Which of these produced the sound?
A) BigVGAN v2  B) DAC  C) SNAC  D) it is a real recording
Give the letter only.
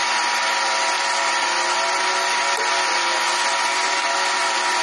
D